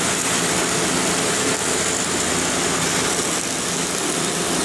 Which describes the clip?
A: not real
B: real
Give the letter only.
B